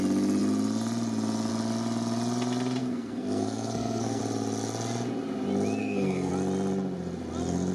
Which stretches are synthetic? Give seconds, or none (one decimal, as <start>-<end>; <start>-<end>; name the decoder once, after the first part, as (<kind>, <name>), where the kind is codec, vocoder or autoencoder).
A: 2.8-4.2 (codec, SNAC); 5.8-6.3